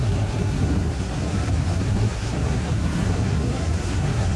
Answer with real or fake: fake